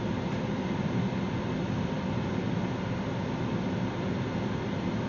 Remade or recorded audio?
recorded